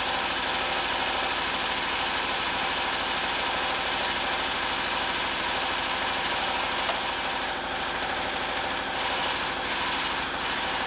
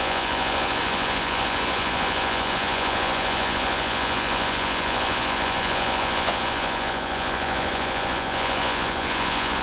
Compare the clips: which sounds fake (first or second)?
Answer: second